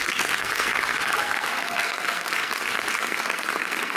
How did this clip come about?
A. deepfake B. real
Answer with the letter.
A